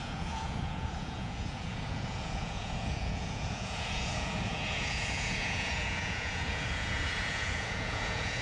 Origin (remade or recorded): remade